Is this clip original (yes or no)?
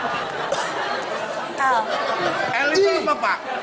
yes